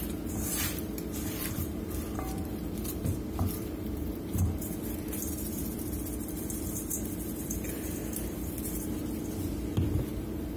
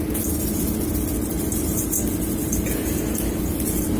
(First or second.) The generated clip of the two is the first